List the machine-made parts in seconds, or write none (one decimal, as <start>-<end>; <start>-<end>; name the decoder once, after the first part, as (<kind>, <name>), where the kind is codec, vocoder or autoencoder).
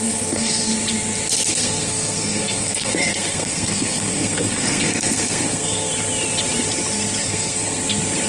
0.0-0.7 (codec, SNAC); 1.5-5.9; 7.2-7.8